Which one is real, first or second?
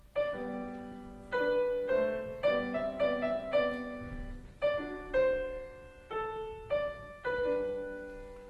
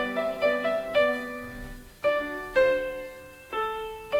first